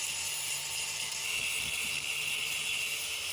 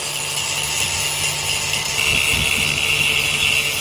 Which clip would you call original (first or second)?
second